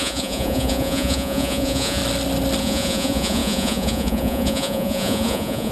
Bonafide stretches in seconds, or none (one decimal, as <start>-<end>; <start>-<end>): 2.0-2.6